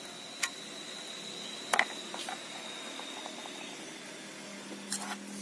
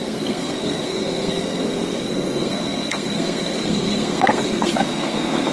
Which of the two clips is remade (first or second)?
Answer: second